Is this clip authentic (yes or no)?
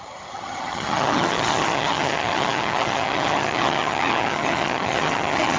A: no